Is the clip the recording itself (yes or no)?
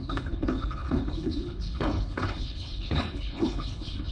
no